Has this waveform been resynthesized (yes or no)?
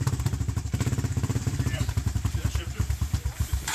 yes